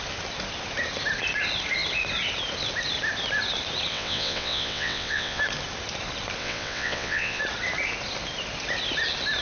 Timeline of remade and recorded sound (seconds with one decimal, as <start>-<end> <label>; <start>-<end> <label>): 0.0-3.9 recorded; 3.9-5.4 remade; 5.4-6.4 recorded; 6.4-7.4 remade; 7.4-9.4 recorded